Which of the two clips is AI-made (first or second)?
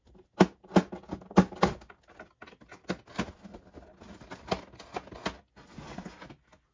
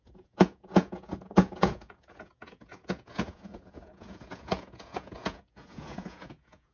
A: second